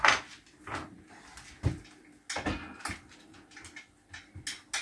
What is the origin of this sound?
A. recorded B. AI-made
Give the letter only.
A